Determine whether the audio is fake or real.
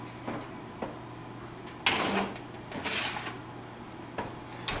real